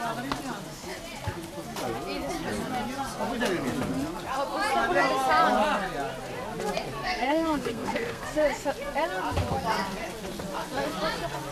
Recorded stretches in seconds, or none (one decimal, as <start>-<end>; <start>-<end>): 0.0-7.0; 8.2-11.5